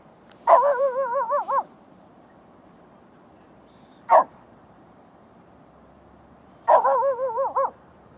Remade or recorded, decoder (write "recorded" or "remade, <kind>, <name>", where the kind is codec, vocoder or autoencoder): remade, vocoder, BigVGAN v2